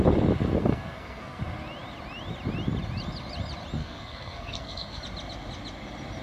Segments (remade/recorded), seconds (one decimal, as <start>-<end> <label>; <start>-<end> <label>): 0.0-0.6 recorded; 0.6-1.4 remade; 1.4-3.8 recorded; 3.8-5.0 remade; 5.0-6.2 recorded